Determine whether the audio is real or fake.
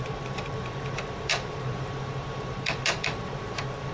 fake